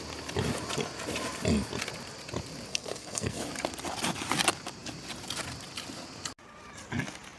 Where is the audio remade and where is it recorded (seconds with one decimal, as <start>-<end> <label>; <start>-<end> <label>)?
0.0-2.7 recorded; 2.7-3.4 remade; 3.4-7.4 recorded